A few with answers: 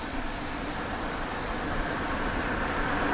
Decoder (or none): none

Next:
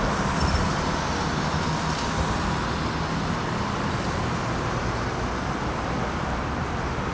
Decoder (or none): none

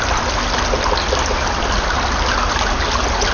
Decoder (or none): none